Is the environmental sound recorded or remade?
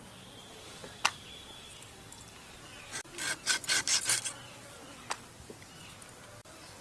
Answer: recorded